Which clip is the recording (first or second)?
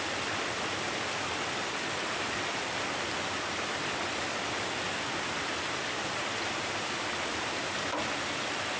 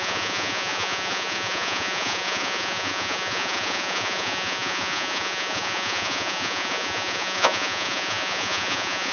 first